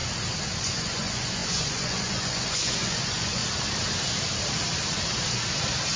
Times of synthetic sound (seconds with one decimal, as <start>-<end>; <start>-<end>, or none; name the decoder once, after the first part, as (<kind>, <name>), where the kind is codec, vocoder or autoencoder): 0.6-3.4 (vocoder, Vocos)